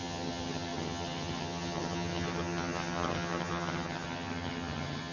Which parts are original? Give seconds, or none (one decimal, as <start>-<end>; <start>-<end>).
none